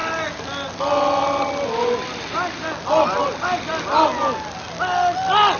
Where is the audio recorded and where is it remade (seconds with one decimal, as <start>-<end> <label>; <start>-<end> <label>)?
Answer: 0.0-5.6 recorded